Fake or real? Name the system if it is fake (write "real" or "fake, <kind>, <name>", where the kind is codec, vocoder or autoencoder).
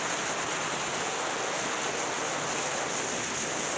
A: real